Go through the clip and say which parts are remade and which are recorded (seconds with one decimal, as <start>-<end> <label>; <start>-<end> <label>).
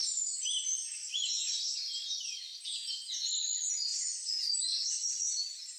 0.0-3.5 remade; 3.5-5.8 recorded